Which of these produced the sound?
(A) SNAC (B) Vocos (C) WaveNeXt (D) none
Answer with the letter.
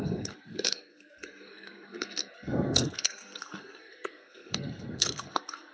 A